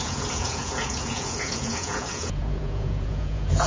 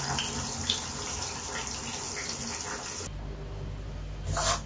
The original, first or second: second